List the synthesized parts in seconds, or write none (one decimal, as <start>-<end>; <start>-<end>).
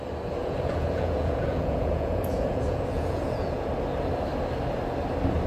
0.4-3.7